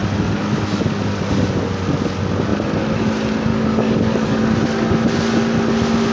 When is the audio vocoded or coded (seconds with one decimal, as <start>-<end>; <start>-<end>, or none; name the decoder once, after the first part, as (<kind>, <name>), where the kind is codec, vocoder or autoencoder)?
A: 3.5-4.4 (codec, DAC)